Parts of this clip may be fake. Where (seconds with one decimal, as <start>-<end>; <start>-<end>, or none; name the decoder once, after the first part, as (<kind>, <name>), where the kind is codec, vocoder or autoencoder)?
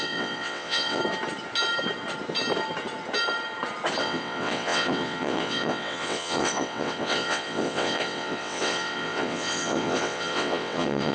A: 0.0-1.0 (vocoder, WaveNeXt); 4.0-11.1